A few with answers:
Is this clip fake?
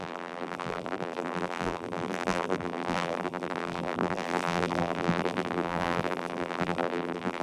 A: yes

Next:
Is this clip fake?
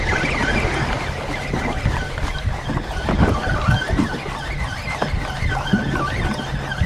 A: no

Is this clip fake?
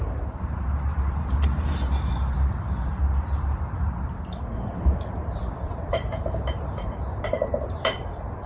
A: yes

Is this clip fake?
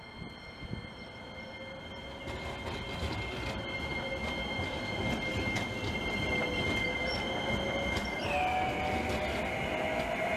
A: no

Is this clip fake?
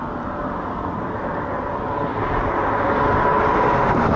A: no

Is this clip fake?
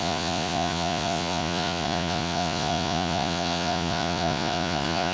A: yes